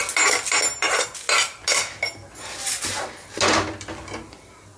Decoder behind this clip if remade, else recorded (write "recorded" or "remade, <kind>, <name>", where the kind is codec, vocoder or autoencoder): recorded